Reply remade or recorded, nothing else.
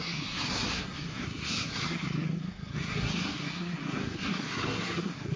remade